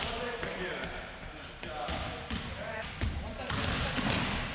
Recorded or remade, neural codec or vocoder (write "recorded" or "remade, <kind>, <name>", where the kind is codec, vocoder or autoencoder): recorded